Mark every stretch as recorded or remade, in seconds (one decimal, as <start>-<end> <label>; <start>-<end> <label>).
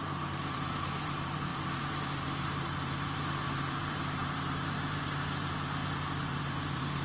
0.0-7.0 remade